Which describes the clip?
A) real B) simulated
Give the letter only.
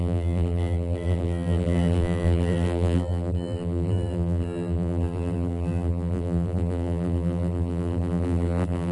B